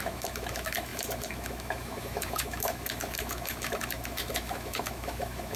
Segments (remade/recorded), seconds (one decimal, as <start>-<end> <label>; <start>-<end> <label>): 0.0-5.6 remade